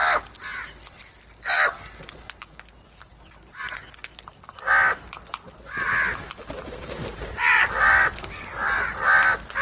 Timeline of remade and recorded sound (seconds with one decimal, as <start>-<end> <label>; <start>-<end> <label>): 0.0-9.6 recorded